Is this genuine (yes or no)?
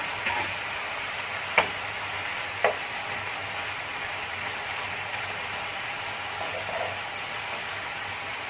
yes